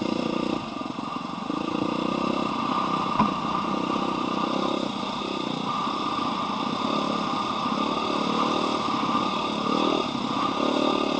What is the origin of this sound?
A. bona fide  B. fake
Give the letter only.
A